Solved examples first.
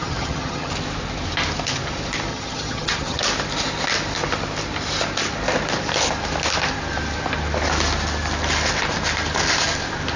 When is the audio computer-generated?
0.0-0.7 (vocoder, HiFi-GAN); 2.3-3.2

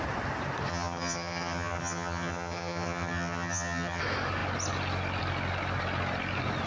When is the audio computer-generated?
0.7-4.0 (vocoder, HiFi-GAN)

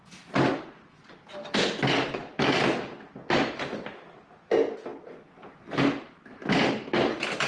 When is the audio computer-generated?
none

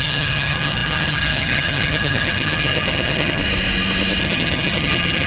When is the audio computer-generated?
0.0-3.4 (vocoder, HiFi-GAN); 4.2-5.3

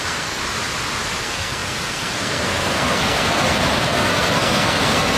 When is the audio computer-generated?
0.0-0.4 (codec, SNAC); 1.2-5.2